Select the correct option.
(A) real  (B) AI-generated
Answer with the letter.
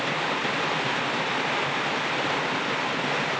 A